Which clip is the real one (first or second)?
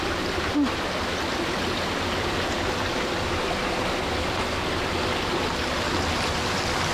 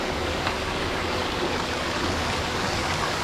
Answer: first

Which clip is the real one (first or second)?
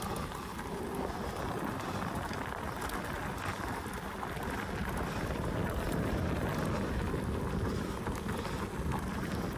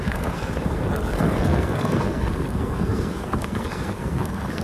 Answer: first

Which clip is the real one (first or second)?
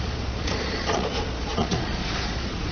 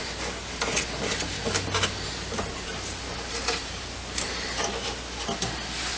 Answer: second